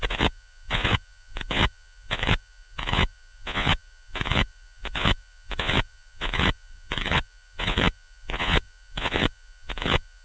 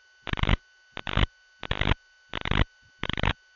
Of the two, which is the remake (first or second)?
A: first